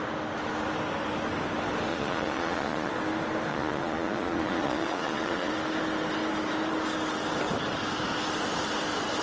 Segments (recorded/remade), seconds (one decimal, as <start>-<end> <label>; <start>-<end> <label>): 0.0-1.9 recorded; 1.9-2.9 remade; 2.9-3.5 recorded; 3.5-5.5 remade; 5.5-9.2 recorded